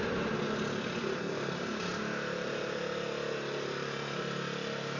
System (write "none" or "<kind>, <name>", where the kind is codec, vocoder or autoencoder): none